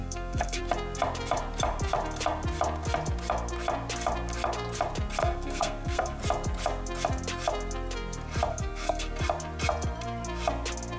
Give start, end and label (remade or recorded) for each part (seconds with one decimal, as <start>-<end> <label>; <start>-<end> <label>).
0.0-0.6 remade; 0.6-5.2 recorded; 5.2-6.2 remade; 6.2-8.5 recorded; 8.5-9.1 remade; 9.1-11.0 recorded